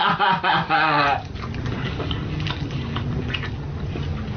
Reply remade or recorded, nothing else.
recorded